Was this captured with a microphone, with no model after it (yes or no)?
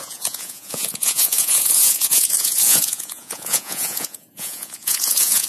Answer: no